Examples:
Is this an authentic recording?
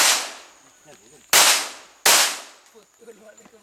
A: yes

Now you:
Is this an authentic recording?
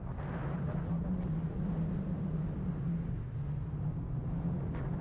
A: yes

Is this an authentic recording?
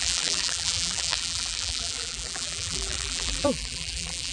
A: no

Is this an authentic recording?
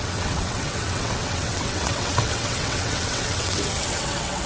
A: no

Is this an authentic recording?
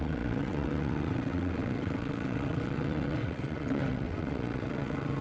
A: no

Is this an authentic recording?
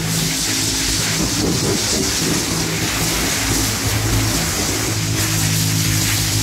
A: yes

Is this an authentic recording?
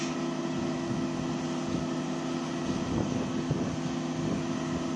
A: yes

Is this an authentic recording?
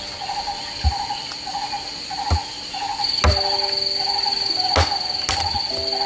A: yes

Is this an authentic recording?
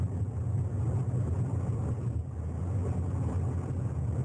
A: yes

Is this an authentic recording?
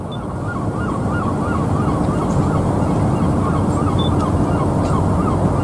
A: yes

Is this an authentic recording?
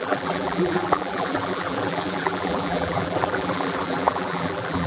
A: no